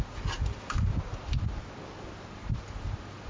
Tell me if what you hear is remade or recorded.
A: recorded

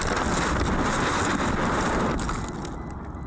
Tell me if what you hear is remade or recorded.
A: recorded